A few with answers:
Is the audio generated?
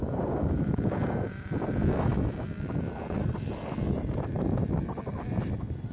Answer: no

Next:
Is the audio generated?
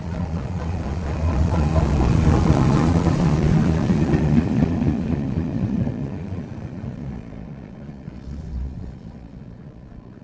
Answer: yes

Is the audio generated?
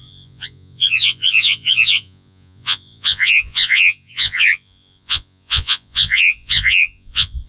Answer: yes